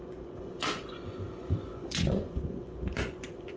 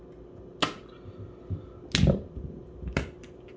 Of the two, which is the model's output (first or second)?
first